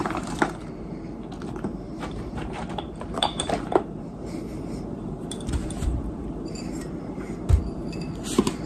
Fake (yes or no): yes